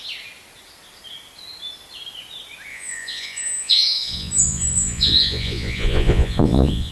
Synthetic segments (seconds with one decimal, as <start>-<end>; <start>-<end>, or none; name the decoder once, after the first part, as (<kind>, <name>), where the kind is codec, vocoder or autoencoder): 2.7-6.9 (vocoder, Vocos)